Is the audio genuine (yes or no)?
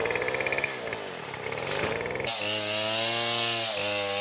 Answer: yes